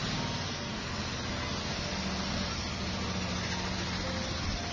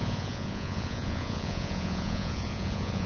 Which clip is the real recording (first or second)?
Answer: first